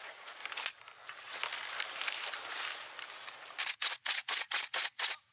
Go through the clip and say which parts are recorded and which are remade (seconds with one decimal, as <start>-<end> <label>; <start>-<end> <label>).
0.0-0.4 remade; 0.4-3.6 recorded; 3.6-5.3 remade